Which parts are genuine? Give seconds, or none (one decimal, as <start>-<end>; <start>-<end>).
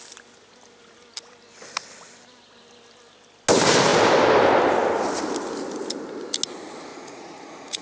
0.0-6.9